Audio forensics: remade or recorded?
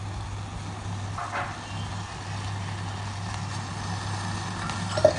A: recorded